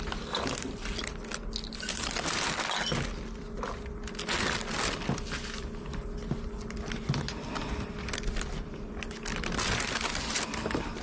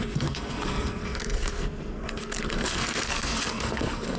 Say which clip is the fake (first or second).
second